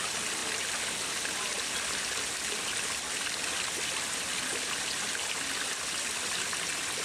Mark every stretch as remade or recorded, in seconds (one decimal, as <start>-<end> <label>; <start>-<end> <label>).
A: 0.0-7.0 recorded